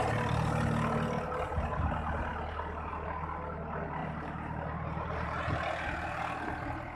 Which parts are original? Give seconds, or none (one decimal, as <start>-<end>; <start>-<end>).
0.0-4.0; 5.4-6.9